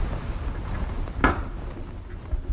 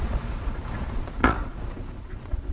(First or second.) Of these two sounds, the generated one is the second